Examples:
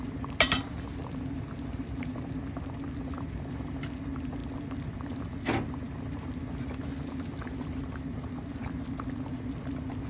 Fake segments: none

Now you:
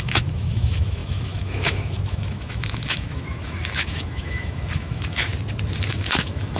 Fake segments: 0.0-5.3 (autoencoder, DAC-VAE); 5.9-6.6

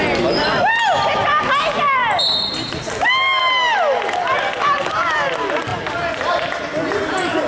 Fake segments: none

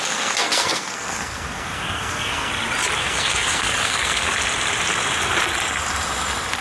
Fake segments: 0.0-2.5 (codec, SNAC); 3.0-4.3

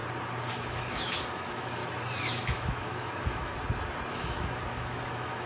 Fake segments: 0.5-1.8 (autoencoder, DAC-VAE); 2.3-3.5; 4.1-5.5

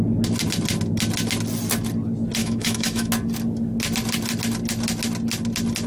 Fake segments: 2.4-3.1 (autoencoder, DAC-VAE)